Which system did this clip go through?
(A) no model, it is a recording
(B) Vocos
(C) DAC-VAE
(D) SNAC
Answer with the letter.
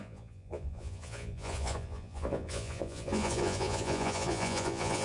B